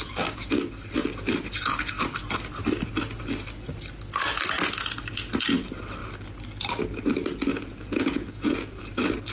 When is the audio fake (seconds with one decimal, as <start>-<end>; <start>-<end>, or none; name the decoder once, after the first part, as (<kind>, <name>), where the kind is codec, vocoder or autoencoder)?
7.5-8.8 (vocoder, Vocos)